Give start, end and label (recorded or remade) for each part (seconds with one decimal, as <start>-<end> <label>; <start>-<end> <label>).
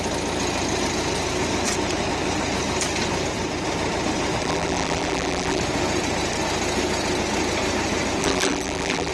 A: 0.0-4.4 recorded; 4.4-5.6 remade; 5.6-8.2 recorded; 8.2-9.1 remade